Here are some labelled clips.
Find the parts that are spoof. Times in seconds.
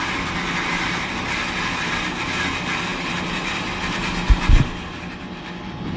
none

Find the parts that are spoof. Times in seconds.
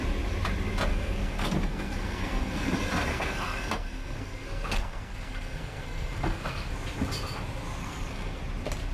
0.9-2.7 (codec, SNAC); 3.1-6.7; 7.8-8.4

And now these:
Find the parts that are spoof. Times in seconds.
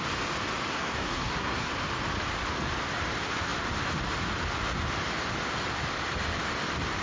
0.7-1.7 (codec, SNAC)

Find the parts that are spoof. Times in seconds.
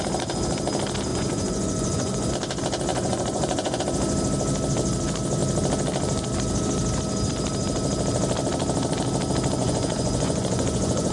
1.1-2.3 (vocoder, Vocos); 2.9-3.8; 9.6-11.1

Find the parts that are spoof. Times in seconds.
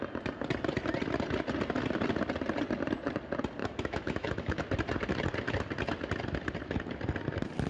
3.6-4.6 (autoencoder, DAC-VAE)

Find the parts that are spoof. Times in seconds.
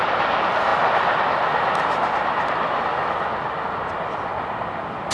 none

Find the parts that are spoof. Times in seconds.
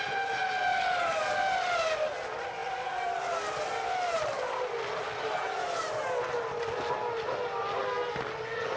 2.6-6.9 (vocoder, BigVGAN v2)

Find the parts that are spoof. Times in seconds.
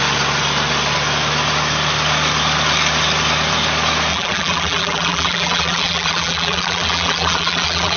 4.1-8.0 (vocoder, BigVGAN v2)